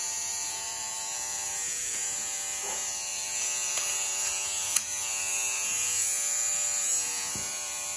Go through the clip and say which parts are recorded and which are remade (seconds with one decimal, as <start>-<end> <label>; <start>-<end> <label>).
0.0-8.0 remade

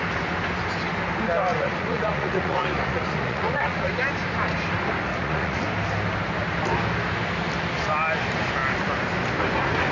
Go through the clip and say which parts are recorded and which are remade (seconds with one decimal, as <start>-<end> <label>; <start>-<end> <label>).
0.0-1.5 recorded; 1.5-3.9 remade; 3.9-5.1 recorded; 5.1-5.6 remade; 5.6-9.9 recorded

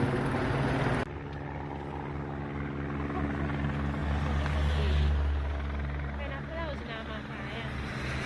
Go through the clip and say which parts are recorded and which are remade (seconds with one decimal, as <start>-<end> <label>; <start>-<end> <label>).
0.0-8.3 recorded

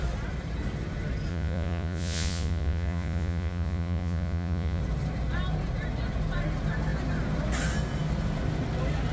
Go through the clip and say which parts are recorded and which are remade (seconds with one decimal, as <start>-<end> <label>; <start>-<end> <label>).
0.0-1.3 recorded; 1.3-4.8 remade; 4.8-9.1 recorded

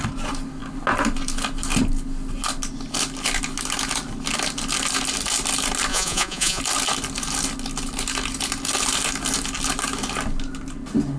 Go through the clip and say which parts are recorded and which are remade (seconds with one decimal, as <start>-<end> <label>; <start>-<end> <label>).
0.0-5.9 recorded; 5.9-6.6 remade; 6.6-11.2 recorded

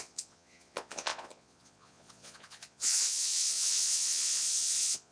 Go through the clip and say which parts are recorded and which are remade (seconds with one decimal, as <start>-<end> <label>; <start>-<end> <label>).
0.0-5.1 remade